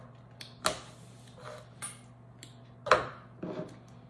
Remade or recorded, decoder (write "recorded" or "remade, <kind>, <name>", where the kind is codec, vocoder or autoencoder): recorded